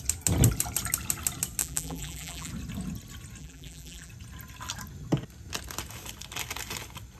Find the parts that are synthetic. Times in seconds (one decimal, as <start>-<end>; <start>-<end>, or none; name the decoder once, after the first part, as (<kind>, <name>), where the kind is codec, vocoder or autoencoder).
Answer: 1.6-2.5 (vocoder, BigVGAN v2); 3.4-4.1